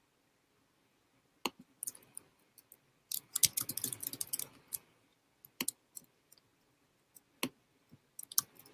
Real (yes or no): yes